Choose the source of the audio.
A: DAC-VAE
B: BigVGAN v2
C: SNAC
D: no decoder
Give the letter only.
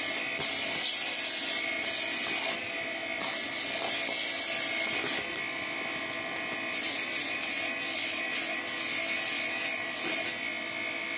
D